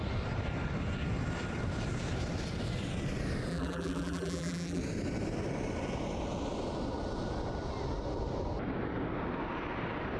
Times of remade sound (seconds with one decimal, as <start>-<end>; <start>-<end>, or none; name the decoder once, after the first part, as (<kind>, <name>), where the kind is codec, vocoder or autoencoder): 3.5-4.8 (vocoder, BigVGAN v2)